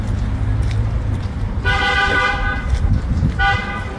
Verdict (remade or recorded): recorded